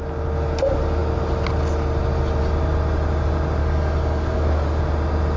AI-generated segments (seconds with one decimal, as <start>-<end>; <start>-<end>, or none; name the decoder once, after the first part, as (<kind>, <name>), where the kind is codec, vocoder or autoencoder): 3.6-4.8 (codec, DAC)